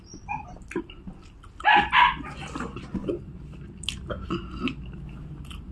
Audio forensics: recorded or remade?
recorded